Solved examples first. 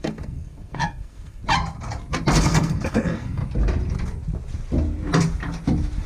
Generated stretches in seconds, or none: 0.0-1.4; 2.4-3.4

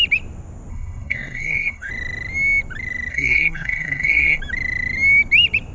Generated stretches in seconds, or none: 0.7-1.9; 3.1-4.4

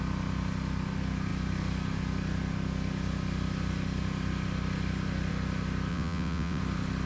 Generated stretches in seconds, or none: 5.9-6.6

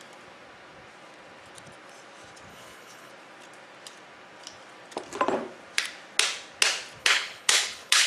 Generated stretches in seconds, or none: 2.5-3.1; 7.0-8.1

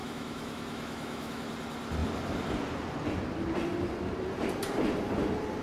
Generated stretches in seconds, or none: 0.0-1.5